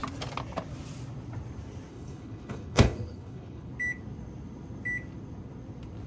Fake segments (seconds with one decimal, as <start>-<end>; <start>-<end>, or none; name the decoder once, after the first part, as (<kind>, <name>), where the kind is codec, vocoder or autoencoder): 1.9-3.7 (codec, HILCodec)